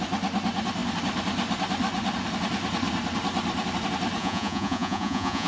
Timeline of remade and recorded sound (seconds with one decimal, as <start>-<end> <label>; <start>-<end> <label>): 0.0-4.2 recorded; 4.2-5.5 remade